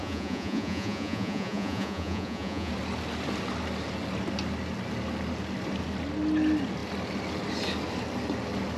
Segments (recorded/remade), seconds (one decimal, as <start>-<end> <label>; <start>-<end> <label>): 0.0-2.7 remade; 2.7-8.8 recorded